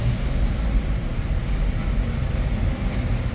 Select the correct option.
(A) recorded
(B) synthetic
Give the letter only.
A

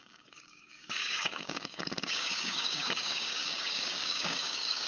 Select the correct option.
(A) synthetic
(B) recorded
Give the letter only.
A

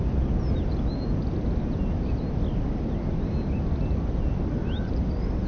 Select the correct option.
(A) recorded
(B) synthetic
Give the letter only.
A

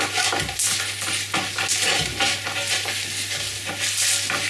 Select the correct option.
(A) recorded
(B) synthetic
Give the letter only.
A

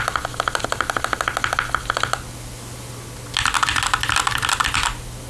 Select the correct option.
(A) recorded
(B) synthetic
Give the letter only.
A